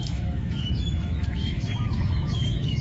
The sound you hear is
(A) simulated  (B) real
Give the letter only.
A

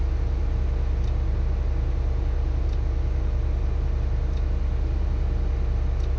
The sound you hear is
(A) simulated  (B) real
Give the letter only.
B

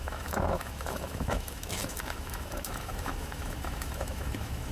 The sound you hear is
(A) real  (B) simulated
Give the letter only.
B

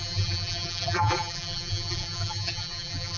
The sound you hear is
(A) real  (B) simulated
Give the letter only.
B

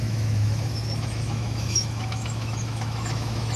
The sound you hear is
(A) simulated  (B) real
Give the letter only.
A